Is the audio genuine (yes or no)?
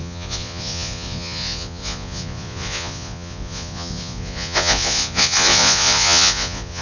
no